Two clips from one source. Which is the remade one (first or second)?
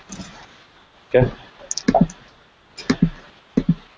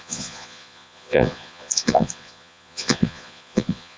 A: second